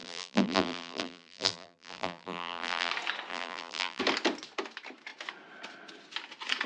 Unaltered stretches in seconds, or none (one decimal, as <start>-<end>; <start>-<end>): 2.9-3.3; 4.0-6.7